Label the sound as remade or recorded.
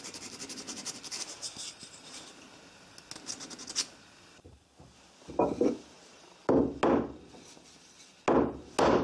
recorded